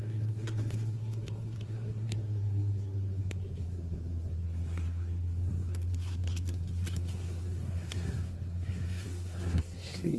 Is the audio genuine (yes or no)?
no